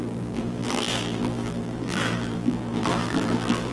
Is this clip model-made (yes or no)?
yes